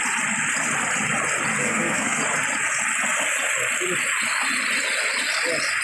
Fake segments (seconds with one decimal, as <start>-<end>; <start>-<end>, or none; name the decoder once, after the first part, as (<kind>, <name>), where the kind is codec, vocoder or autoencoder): 1.6-2.2 (codec, SNAC)